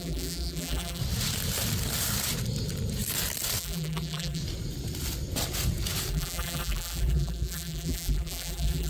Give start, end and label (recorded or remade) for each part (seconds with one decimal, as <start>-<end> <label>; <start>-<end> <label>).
0.0-1.0 remade; 1.0-3.6 recorded; 3.6-4.4 remade; 4.4-6.1 recorded; 6.1-8.9 remade